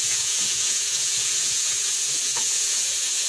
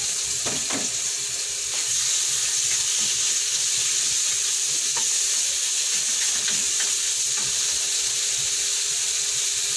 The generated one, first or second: first